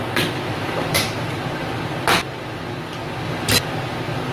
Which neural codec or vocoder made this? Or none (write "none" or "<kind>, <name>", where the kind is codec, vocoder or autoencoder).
none